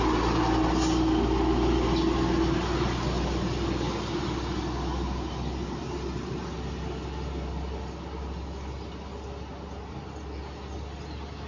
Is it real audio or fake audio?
real